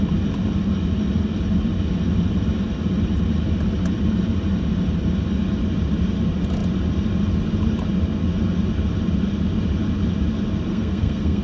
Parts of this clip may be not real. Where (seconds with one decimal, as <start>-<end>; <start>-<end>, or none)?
10.7-11.4